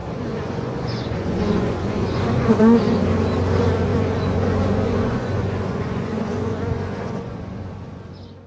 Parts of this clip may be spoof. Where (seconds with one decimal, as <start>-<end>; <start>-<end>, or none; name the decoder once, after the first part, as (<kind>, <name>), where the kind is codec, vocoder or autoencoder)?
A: 0.0-2.6 (vocoder, Vocos); 3.9-8.1